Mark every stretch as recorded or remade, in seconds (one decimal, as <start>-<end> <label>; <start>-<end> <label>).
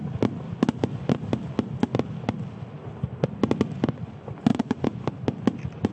0.0-4.5 recorded; 4.5-5.0 remade; 5.0-5.9 recorded